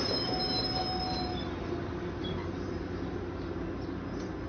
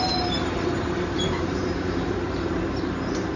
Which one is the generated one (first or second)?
second